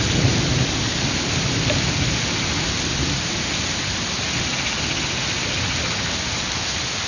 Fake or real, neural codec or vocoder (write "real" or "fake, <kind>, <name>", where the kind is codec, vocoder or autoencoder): real